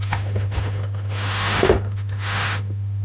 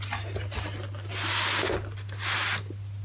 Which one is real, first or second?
second